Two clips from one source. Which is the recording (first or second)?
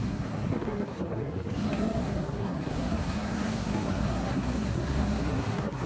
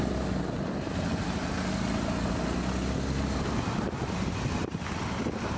second